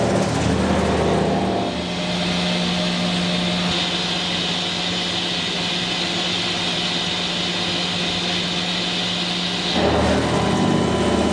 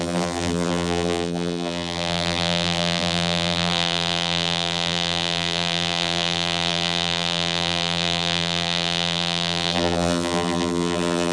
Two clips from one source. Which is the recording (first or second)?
first